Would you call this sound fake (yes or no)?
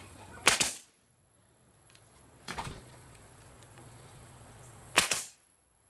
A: yes